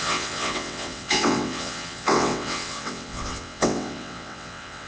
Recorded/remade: remade